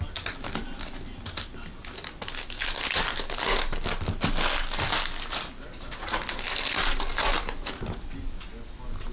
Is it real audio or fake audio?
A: real